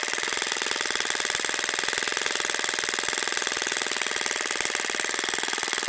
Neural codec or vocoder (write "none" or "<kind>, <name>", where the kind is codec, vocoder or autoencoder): none